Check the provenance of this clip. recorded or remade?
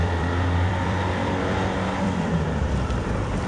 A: remade